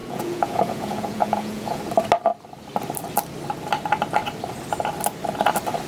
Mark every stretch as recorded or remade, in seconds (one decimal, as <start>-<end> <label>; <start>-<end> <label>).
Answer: 0.0-1.8 remade; 1.8-5.9 recorded